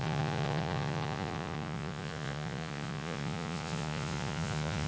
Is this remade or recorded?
remade